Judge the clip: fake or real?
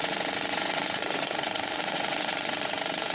fake